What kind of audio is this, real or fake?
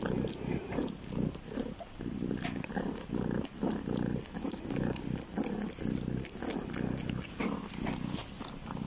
real